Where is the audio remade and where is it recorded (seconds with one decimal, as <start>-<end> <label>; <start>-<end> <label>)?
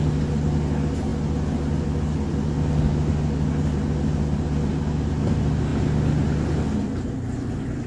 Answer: 0.0-7.9 recorded